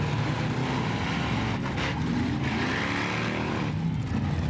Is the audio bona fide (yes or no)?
yes